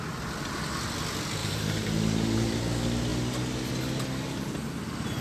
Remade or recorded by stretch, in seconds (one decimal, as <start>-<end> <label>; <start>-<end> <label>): 0.0-1.4 recorded; 1.4-2.6 remade; 2.6-5.2 recorded